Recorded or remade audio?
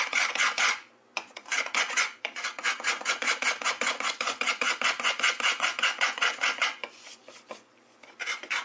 remade